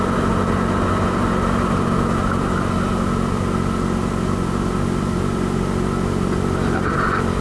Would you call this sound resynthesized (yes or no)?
no